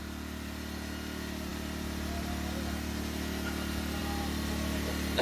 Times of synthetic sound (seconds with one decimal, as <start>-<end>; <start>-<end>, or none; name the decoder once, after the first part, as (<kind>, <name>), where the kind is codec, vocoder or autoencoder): none